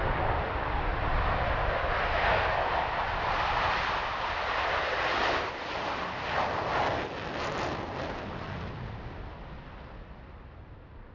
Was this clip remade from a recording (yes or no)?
no